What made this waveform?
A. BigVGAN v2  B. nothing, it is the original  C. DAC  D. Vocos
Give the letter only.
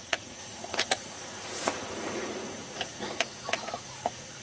D